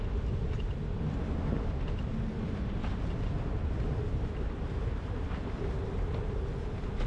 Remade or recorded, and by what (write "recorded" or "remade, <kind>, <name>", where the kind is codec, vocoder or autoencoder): recorded